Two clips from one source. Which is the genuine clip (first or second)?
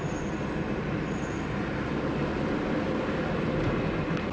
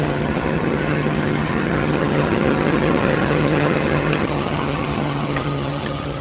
first